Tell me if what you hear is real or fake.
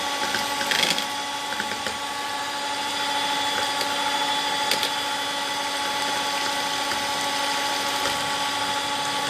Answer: real